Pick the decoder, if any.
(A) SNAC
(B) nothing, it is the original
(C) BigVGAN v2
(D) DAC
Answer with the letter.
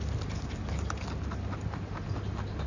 B